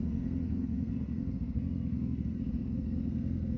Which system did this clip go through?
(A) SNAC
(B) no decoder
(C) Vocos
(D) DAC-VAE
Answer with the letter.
A